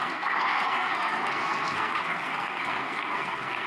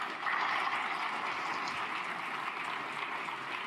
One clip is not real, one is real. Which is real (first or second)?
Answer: second